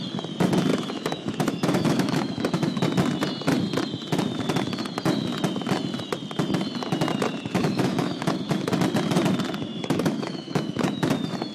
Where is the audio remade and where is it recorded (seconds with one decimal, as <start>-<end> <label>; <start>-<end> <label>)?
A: 0.0-0.7 recorded; 0.7-2.8 remade; 2.8-7.6 recorded; 7.6-8.7 remade; 8.7-9.7 recorded; 9.7-11.1 remade; 11.1-11.5 recorded